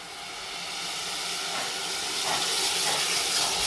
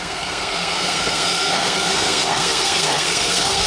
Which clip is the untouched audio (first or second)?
first